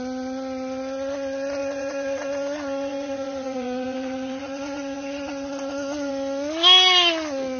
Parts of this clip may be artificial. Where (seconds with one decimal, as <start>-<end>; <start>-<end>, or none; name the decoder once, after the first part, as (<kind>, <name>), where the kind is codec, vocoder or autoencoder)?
1.6-6.1 (vocoder, Vocos)